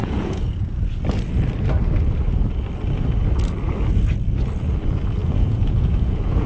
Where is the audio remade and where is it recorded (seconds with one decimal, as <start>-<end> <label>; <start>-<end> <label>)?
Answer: 0.0-0.5 remade; 0.5-5.2 recorded; 5.2-6.5 remade

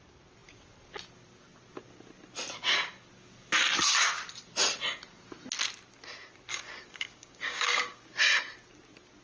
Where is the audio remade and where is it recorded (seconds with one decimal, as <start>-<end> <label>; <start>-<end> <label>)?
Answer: 0.0-6.5 recorded; 6.5-8.2 remade; 8.2-9.2 recorded

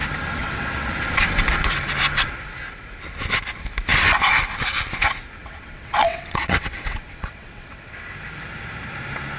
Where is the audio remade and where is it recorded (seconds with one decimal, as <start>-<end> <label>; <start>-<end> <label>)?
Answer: 0.0-0.4 recorded; 0.4-0.9 remade; 0.9-5.4 recorded; 5.4-8.0 remade; 8.0-9.4 recorded

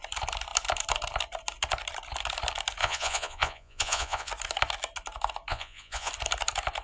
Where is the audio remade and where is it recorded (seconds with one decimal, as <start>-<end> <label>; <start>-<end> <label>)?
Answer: 0.0-2.8 recorded; 2.8-4.3 remade; 4.3-5.5 recorded; 5.5-6.1 remade; 6.1-6.8 recorded

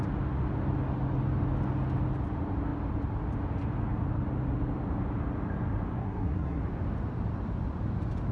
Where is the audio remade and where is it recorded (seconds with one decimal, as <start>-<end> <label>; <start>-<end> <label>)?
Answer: 0.0-5.9 recorded; 5.9-6.6 remade; 6.6-8.3 recorded

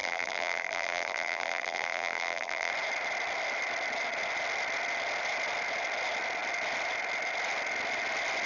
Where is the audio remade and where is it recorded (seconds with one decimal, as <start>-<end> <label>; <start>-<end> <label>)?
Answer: 0.0-2.7 remade; 2.7-8.5 recorded

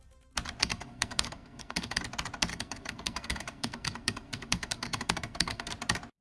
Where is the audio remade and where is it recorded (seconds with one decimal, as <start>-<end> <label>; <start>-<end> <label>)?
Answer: 0.0-0.6 recorded; 0.6-2.0 remade; 2.0-2.5 recorded; 2.5-5.7 remade; 5.7-6.2 recorded

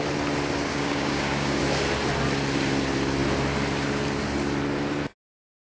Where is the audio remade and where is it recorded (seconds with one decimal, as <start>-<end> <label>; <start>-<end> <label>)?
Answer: 0.0-0.7 recorded; 0.7-1.6 remade; 1.6-5.6 recorded